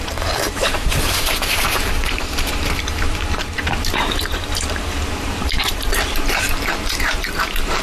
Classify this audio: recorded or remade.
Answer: remade